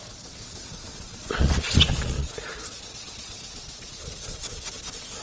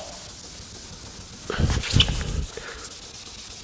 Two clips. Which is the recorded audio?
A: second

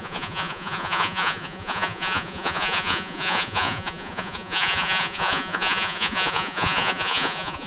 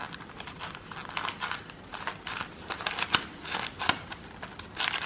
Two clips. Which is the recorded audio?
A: second